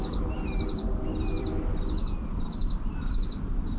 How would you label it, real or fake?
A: fake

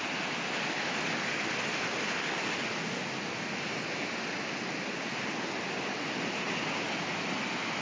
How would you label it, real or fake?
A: real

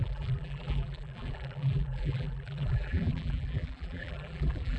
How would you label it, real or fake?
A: fake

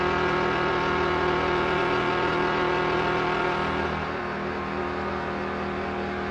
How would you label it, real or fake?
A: real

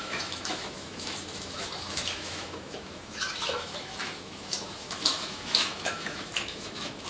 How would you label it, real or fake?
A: fake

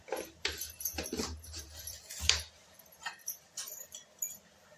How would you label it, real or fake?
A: fake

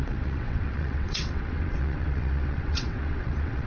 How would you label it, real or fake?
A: fake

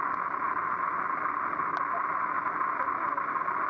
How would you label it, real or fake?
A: real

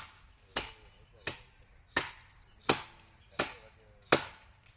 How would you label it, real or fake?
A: real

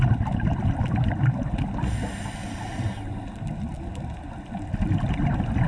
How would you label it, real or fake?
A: real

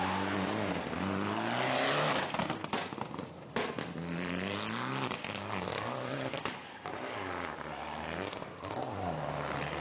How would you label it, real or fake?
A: real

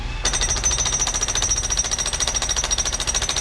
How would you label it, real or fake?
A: fake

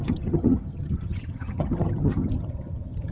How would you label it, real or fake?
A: fake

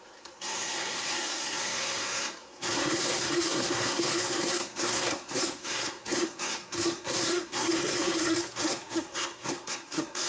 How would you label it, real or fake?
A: fake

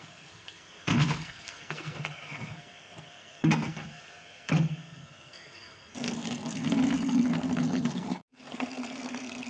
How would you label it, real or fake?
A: fake